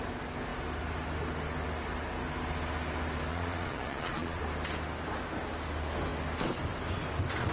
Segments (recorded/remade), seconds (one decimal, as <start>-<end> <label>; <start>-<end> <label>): 0.0-3.3 recorded; 3.3-4.4 remade; 4.4-7.5 recorded